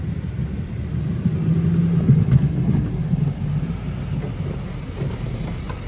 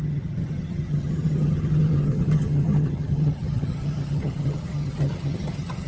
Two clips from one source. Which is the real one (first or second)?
first